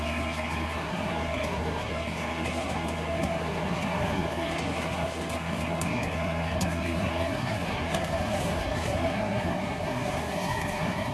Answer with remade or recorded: remade